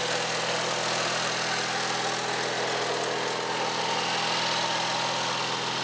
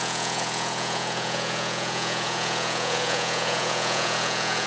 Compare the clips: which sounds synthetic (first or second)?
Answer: second